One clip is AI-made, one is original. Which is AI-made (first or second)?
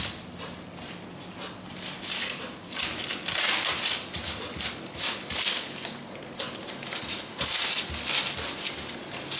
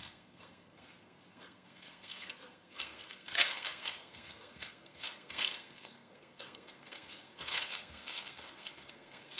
second